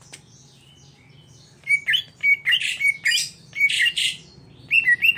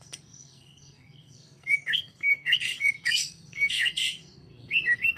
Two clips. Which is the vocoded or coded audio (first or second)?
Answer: second